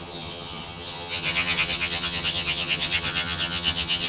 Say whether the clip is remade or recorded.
remade